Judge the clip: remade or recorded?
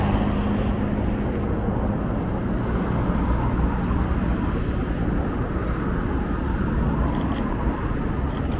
recorded